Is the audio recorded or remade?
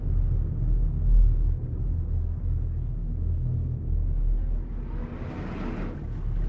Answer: recorded